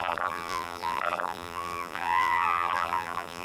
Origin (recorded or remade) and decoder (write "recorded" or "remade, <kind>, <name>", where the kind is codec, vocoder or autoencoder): remade, vocoder, BigVGAN v2